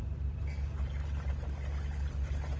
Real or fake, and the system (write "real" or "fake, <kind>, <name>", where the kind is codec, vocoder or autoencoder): real